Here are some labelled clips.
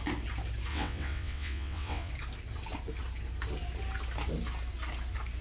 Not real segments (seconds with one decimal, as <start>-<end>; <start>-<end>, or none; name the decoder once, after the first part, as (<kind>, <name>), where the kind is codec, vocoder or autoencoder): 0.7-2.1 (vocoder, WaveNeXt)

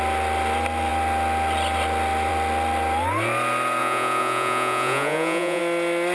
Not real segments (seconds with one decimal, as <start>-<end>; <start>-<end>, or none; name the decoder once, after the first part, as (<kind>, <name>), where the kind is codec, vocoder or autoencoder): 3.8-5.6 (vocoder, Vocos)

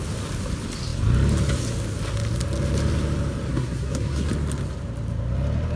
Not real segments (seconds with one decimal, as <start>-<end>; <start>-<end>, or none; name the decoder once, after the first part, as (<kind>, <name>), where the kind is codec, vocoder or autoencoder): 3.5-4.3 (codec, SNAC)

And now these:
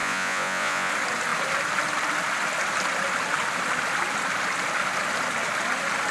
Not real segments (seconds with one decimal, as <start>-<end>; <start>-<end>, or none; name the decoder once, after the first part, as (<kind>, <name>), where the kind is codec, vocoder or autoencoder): 0.0-0.9 (vocoder, Vocos)